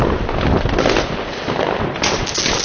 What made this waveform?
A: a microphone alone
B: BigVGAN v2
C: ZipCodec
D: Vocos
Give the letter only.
A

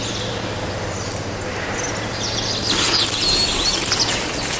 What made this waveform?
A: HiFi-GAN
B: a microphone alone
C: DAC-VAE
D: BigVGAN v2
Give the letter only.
B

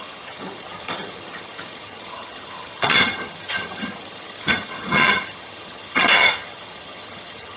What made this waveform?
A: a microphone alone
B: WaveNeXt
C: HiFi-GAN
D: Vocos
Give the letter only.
C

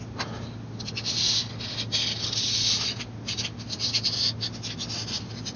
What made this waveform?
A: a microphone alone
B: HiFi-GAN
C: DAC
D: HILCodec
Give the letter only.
A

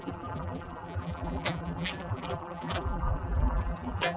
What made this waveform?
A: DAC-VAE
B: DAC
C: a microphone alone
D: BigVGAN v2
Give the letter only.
D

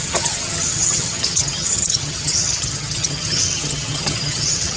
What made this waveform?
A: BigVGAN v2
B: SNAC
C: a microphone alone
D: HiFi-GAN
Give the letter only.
D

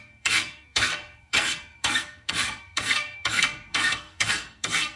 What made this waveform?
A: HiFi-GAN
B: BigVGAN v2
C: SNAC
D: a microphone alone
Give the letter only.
C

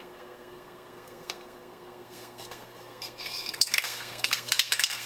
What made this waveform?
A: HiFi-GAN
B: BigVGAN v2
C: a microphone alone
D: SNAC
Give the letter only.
D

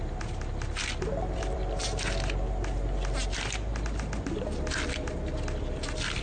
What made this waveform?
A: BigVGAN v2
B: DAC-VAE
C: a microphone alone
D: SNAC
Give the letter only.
A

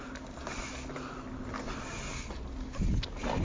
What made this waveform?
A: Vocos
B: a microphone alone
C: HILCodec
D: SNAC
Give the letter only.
B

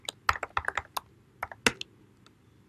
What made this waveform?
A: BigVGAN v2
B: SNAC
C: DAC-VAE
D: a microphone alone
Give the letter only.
D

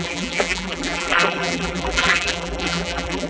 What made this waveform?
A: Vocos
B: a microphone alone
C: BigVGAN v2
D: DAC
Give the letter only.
C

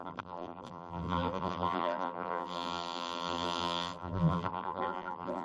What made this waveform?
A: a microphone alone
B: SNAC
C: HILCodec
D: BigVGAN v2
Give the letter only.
D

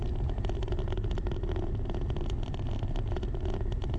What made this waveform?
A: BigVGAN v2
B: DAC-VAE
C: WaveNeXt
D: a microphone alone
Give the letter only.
D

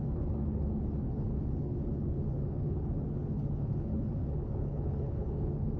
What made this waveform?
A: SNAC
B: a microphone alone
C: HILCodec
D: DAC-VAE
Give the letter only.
C